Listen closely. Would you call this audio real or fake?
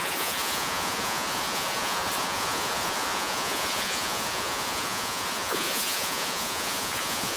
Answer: fake